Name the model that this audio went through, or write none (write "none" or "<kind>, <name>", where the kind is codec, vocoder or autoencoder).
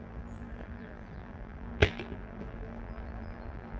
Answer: vocoder, BigVGAN v2